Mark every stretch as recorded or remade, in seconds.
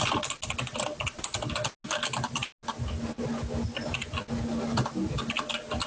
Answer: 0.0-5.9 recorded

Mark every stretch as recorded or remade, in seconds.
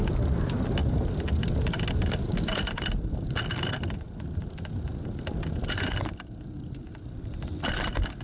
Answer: 0.0-8.2 recorded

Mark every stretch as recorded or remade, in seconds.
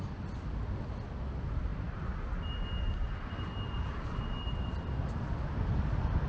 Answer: 0.0-6.3 recorded